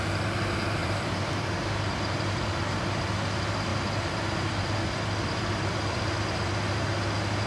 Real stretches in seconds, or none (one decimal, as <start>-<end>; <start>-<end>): 0.0-0.8; 2.4-3.7; 6.5-7.5